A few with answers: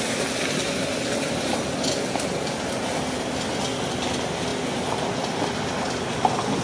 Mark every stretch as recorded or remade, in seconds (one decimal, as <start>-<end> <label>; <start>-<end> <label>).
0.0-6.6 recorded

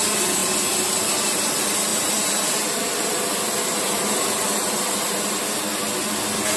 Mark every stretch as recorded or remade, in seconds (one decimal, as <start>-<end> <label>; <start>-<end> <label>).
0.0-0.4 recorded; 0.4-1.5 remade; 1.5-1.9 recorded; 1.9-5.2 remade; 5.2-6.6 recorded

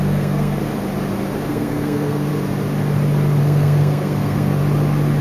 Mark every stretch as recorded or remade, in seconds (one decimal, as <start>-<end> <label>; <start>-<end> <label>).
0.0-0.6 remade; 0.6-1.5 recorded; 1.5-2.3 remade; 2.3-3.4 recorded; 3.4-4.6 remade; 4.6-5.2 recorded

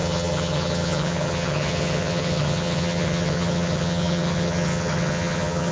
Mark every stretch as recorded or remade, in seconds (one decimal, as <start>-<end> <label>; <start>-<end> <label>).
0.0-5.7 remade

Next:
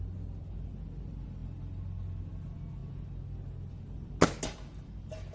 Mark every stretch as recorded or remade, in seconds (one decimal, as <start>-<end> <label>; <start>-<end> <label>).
0.0-5.3 recorded

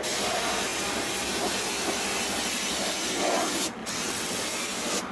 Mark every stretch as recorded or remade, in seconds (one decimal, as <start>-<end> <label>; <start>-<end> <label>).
0.0-3.8 recorded; 3.8-4.4 remade; 4.4-5.1 recorded

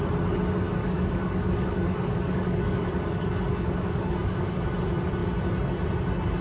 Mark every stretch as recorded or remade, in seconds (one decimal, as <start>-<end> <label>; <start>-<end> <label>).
0.0-0.8 recorded; 0.8-4.6 remade; 4.6-6.4 recorded

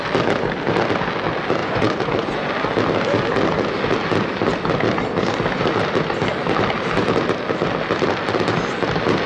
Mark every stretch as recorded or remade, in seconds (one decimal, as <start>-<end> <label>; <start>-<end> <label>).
0.0-1.6 recorded; 1.6-2.5 remade; 2.5-9.3 recorded